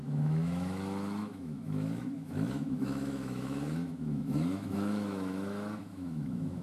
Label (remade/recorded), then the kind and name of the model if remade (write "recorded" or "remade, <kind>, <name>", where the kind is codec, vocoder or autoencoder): remade, autoencoder, DAC-VAE